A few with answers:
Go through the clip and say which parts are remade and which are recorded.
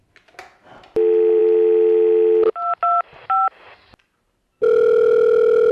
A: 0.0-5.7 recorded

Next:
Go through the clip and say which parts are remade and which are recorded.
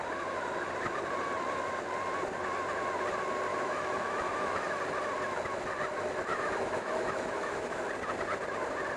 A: 0.0-3.5 recorded; 3.5-4.6 remade; 4.6-6.3 recorded; 6.3-7.8 remade; 7.8-9.0 recorded